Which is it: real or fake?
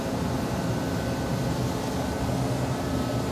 real